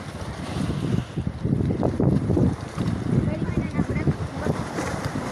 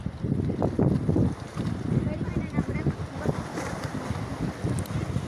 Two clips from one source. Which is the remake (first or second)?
first